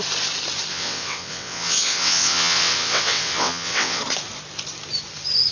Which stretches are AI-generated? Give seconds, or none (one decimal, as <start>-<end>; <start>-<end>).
0.7-4.0